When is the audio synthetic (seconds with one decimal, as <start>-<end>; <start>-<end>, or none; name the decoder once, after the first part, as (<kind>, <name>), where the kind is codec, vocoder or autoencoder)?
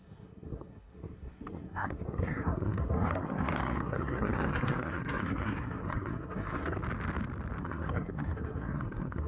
0.0-6.8 (codec, SNAC); 7.6-9.3